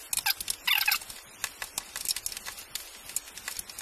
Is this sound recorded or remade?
recorded